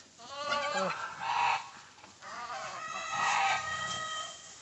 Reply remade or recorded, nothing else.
remade